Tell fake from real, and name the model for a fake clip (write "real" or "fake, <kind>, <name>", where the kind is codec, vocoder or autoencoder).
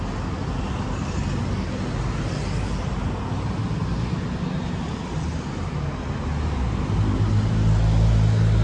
real